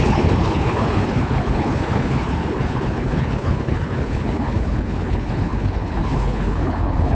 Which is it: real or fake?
fake